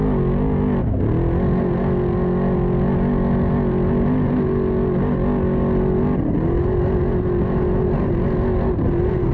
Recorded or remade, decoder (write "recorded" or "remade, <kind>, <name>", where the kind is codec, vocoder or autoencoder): recorded